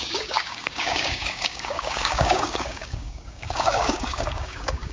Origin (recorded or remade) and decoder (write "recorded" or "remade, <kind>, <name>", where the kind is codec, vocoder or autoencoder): remade, codec, DAC